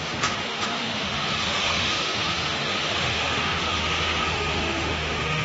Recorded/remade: remade